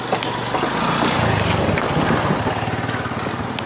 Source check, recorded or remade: recorded